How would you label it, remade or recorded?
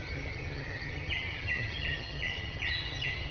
remade